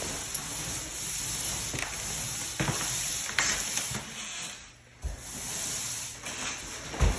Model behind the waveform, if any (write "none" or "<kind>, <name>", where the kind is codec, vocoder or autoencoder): none